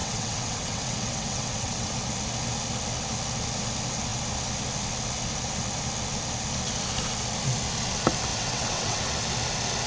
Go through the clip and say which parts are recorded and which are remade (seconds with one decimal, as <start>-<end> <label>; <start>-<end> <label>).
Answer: 0.0-1.9 remade; 1.9-8.3 recorded; 8.3-9.0 remade; 9.0-9.9 recorded

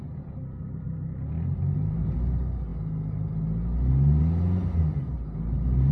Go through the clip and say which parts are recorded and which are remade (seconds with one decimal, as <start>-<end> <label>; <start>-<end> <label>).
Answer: 0.0-5.9 recorded

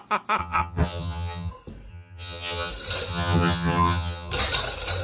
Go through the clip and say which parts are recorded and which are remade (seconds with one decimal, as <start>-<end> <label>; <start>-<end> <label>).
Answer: 0.0-0.4 recorded; 0.4-1.5 remade; 1.5-1.9 recorded; 1.9-2.7 remade; 2.7-3.1 recorded; 3.1-4.3 remade; 4.3-5.0 recorded

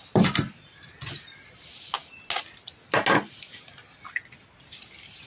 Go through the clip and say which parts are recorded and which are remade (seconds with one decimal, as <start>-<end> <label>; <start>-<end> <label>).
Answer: 0.0-5.3 recorded